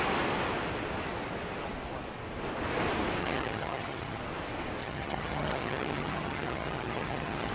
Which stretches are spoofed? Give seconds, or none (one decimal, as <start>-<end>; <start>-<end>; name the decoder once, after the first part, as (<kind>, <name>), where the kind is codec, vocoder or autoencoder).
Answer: 3.2-4.2 (vocoder, HiFi-GAN); 4.8-7.5